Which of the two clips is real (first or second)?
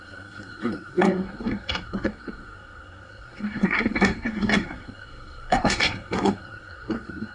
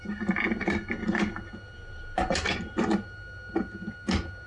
second